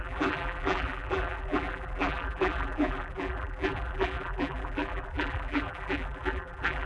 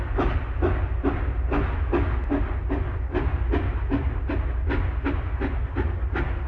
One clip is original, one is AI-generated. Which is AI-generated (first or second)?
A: first